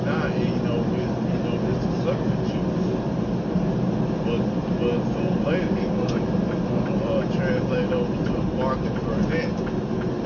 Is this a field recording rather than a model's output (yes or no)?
yes